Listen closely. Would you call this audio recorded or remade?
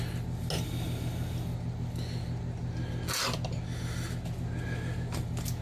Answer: recorded